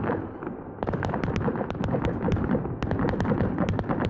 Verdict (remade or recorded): recorded